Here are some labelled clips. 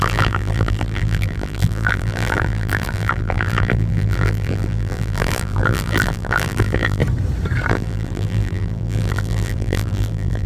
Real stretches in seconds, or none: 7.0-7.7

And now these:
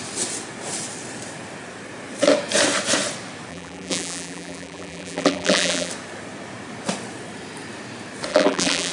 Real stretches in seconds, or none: 0.0-3.5; 5.9-8.3

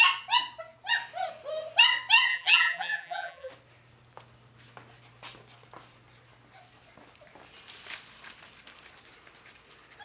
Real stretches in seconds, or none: 0.0-2.3; 3.5-10.0

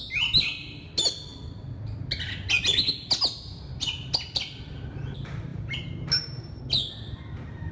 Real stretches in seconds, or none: 0.0-5.5; 6.6-7.7